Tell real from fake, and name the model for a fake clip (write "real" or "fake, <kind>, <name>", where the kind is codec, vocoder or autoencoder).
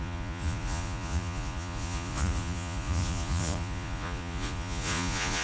fake, vocoder, Vocos